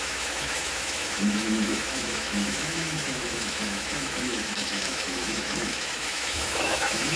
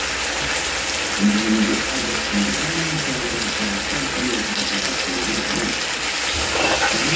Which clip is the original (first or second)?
second